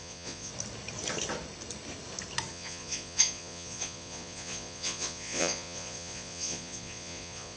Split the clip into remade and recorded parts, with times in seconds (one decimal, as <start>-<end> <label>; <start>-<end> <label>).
0.0-0.5 remade; 0.5-2.5 recorded; 2.5-7.6 remade